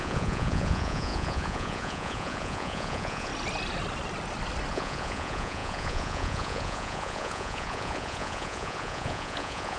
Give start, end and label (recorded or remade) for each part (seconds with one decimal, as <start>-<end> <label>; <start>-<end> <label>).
0.0-3.3 remade; 3.3-4.7 recorded; 4.7-9.8 remade